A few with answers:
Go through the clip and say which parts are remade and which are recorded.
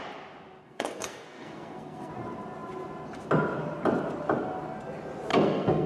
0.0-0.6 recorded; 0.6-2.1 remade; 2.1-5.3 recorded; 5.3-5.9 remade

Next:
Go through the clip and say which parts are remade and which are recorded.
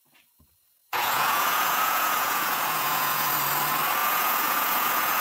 0.0-0.8 recorded; 0.8-3.3 remade; 3.3-4.0 recorded; 4.0-5.2 remade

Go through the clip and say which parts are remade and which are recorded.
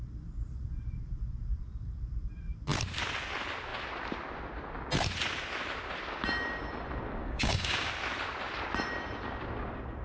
0.0-7.2 recorded; 7.2-7.9 remade; 7.9-10.0 recorded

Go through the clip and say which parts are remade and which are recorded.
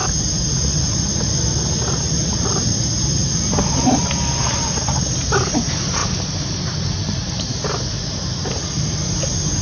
0.0-9.6 recorded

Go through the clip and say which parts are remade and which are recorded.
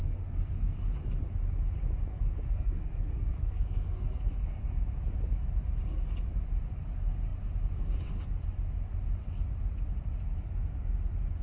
0.0-0.8 remade; 0.8-2.1 recorded; 2.1-4.6 remade; 4.6-11.4 recorded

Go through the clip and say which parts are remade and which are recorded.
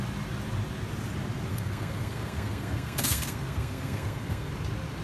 0.0-1.5 recorded; 1.5-4.5 remade; 4.5-5.0 recorded